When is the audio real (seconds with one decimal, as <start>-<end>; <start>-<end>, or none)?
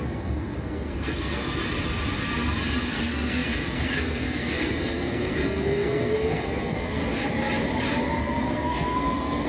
1.6-2.9; 7.0-8.2